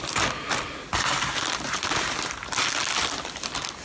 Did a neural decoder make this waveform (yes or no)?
no